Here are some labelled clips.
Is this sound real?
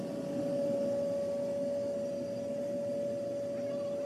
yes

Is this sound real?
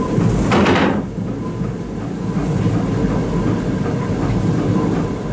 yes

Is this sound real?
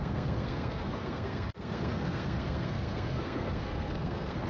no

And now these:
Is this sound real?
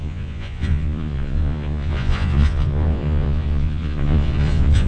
no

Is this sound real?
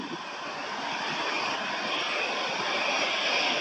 yes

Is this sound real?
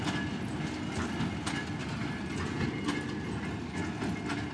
yes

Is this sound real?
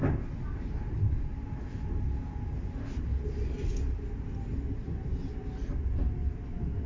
yes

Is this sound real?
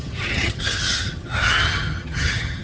no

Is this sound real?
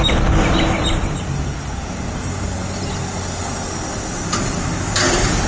yes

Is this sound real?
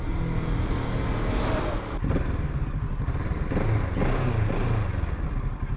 yes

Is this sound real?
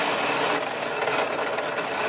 yes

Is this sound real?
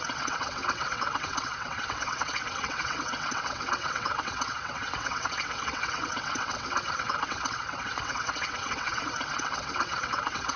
no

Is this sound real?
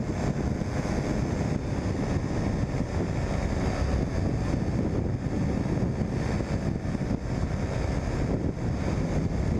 yes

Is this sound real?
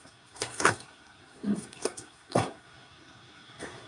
no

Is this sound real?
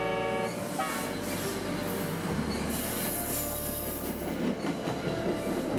yes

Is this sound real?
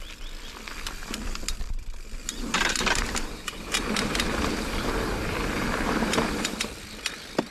no